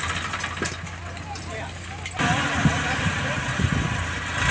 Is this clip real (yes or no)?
yes